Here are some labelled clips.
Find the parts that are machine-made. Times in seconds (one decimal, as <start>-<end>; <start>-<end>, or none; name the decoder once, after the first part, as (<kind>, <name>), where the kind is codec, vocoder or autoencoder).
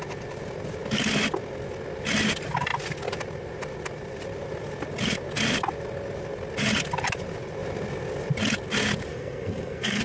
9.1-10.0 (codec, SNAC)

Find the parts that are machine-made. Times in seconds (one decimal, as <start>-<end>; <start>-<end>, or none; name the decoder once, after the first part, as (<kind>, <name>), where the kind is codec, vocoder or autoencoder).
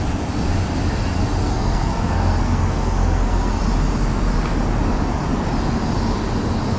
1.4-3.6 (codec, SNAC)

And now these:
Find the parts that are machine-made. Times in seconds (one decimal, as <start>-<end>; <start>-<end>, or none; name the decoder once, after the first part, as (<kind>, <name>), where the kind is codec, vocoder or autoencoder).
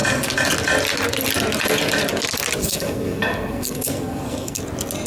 2.6-4.6 (codec, SNAC)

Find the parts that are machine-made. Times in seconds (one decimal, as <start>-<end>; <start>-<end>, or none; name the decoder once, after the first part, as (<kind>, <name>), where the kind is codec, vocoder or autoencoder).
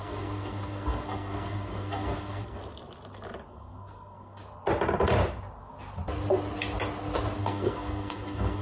0.0-2.6 (codec, SNAC); 3.5-4.4; 7.4-8.6